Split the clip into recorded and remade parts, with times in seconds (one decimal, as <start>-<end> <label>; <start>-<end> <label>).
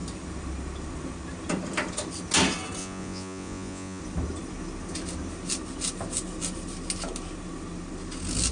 0.0-2.8 recorded; 2.8-4.0 remade; 4.0-8.5 recorded